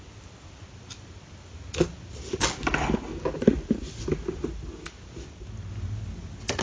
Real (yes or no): yes